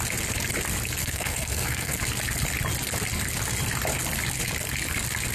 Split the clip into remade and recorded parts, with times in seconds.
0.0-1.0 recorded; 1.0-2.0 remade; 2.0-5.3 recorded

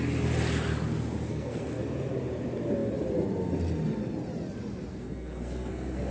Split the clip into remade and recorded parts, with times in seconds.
0.0-1.3 recorded; 1.3-1.8 remade; 1.8-4.9 recorded; 4.9-6.1 remade

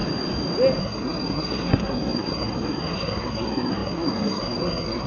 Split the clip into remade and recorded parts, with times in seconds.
0.0-0.8 recorded; 0.8-5.1 remade

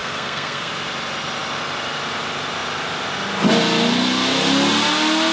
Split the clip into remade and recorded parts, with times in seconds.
0.0-0.7 remade; 0.7-5.3 recorded

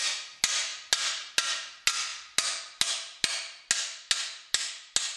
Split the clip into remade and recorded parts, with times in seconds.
0.0-5.2 recorded

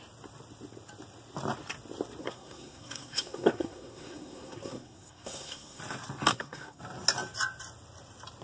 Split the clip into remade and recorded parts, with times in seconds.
0.0-2.2 recorded; 2.2-5.8 remade; 5.8-6.3 recorded; 6.3-6.8 remade; 6.8-8.4 recorded

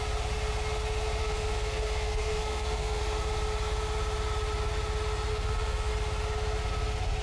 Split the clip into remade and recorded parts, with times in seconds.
0.0-1.2 recorded; 1.2-3.0 remade; 3.0-5.3 recorded; 5.3-5.9 remade; 5.9-7.2 recorded

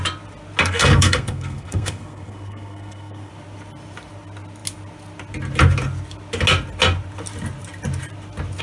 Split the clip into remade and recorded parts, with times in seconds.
0.0-0.6 recorded; 0.6-3.3 remade; 3.3-8.6 recorded